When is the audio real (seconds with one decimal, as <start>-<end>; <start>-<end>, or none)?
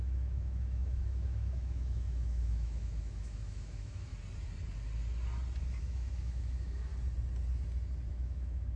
4.1-5.8; 6.9-8.1